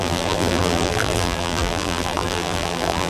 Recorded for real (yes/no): no